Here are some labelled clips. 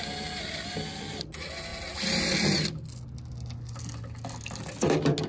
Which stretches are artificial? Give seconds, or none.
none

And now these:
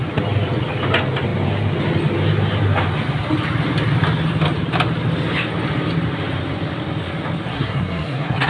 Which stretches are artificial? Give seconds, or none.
7.5-8.5 (codec, SNAC)